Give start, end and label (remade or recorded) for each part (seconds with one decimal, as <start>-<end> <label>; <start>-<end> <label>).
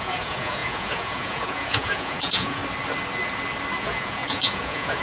0.0-2.6 remade; 2.6-3.8 recorded; 3.8-5.0 remade